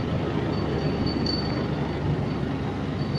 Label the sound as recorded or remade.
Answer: recorded